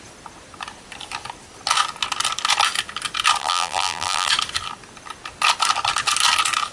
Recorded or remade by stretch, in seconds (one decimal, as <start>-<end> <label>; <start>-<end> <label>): 0.0-3.4 recorded; 3.4-4.3 remade; 4.3-6.7 recorded